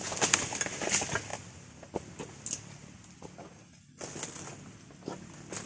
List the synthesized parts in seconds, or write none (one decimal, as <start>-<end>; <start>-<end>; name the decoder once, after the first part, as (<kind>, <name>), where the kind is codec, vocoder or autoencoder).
1.3-1.9 (vocoder, BigVGAN v2)